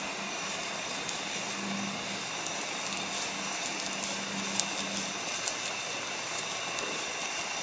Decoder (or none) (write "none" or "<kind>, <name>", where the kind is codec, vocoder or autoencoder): none